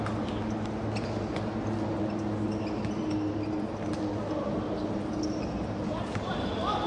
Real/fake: real